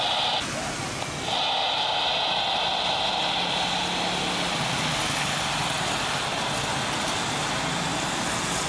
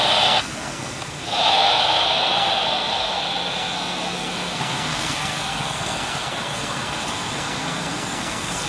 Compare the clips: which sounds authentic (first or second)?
first